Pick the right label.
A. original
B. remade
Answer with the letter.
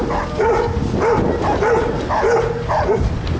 A